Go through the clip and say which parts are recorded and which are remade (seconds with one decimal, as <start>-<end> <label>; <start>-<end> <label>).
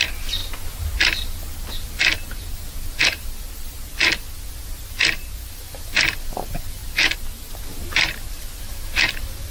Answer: 0.0-0.4 remade; 0.4-5.5 recorded; 5.5-6.8 remade; 6.8-7.6 recorded; 7.6-9.5 remade